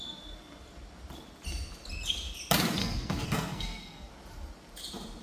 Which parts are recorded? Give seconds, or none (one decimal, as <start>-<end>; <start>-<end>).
0.0-2.8; 4.1-5.2